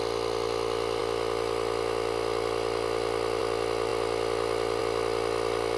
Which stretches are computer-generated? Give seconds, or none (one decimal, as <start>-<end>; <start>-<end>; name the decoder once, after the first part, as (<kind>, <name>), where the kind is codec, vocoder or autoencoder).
none

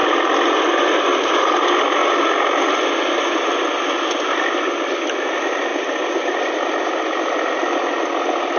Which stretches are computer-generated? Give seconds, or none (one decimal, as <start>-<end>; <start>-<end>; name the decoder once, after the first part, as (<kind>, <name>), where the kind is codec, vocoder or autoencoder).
0.0-1.0 (vocoder, BigVGAN v2)

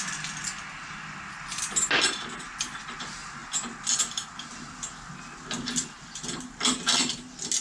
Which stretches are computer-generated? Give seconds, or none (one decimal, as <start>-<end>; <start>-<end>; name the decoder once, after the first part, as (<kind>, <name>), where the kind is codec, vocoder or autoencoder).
none

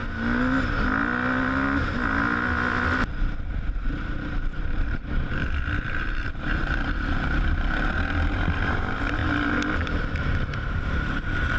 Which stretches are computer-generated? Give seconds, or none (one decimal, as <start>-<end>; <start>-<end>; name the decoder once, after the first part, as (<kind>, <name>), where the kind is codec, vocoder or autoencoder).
4.0-9.2 (vocoder, BigVGAN v2); 10.2-11.6

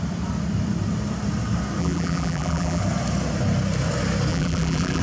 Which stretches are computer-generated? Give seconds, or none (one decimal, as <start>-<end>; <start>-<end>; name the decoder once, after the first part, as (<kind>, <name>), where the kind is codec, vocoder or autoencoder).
1.8-2.8 (vocoder, BigVGAN v2); 4.3-5.0